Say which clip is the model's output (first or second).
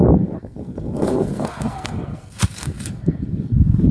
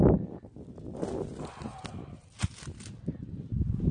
first